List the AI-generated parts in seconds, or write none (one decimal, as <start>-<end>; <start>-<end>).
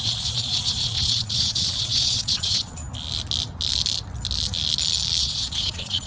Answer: 0.0-2.8; 5.2-6.1